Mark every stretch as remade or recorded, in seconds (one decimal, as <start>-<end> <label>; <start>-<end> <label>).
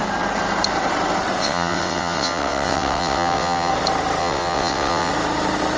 0.0-1.4 recorded; 1.4-3.7 remade; 3.7-4.2 recorded; 4.2-5.1 remade; 5.1-5.8 recorded